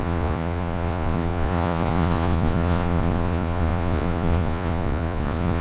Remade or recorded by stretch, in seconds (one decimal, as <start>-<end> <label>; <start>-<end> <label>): 0.0-5.6 remade